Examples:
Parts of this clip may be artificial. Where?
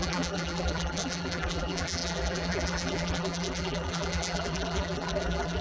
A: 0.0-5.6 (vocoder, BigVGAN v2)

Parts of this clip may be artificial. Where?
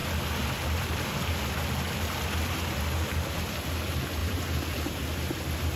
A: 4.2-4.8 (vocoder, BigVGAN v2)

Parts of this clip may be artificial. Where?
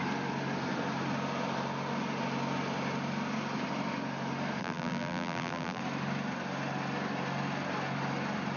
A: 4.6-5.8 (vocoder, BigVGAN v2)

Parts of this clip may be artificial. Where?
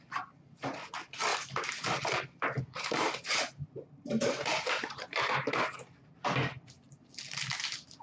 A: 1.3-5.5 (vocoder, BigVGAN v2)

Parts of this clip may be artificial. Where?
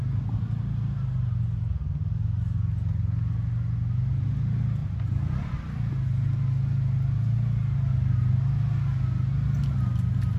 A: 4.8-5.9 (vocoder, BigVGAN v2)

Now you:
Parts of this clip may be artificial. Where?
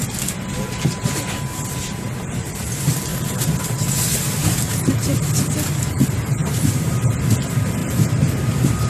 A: 4.4-4.9 (vocoder, BigVGAN v2); 6.4-7.1; 7.8-8.9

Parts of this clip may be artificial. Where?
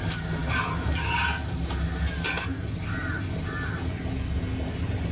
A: none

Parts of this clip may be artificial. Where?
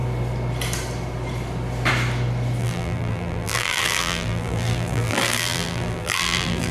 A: 2.6-6.7 (vocoder, BigVGAN v2)